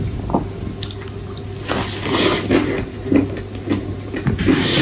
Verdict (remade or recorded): recorded